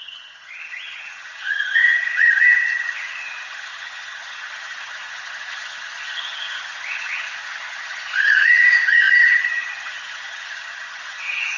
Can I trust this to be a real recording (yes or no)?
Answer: no